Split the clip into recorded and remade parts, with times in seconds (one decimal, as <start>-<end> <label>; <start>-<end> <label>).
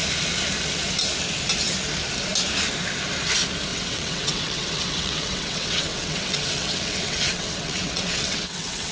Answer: 0.0-3.7 recorded; 3.7-8.9 remade